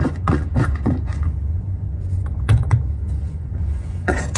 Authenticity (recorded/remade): remade